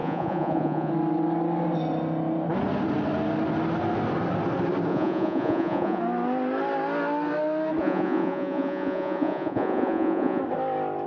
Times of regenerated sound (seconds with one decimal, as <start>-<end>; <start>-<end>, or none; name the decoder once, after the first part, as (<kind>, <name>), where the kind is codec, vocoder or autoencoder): 0.0-0.9 (vocoder, Vocos); 4.9-6.0; 7.8-10.4